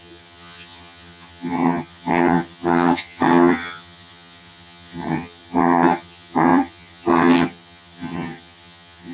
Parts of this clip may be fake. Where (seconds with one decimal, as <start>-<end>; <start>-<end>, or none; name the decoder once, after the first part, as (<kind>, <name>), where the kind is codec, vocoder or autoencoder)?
0.0-9.1 (vocoder, HiFi-GAN)